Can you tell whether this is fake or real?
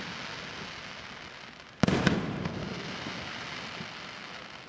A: real